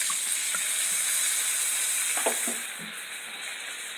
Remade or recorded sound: recorded